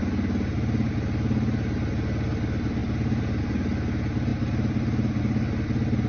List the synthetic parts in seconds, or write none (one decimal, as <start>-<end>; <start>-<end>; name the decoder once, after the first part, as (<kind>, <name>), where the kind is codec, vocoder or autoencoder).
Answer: none